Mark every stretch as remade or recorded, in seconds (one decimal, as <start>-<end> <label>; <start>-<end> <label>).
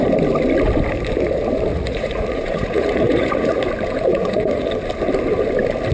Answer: 0.0-1.7 recorded; 1.7-3.6 remade; 3.6-4.1 recorded; 4.1-4.7 remade; 4.7-5.9 recorded